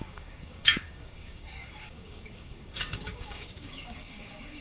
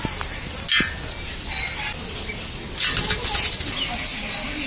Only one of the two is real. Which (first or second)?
second